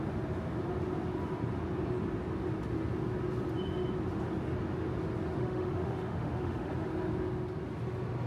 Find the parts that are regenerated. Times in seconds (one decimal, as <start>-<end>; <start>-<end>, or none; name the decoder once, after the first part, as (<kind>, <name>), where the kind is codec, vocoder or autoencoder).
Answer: 5.4-6.7 (autoencoder, DAC-VAE)